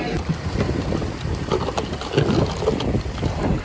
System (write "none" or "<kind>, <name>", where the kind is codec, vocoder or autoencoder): none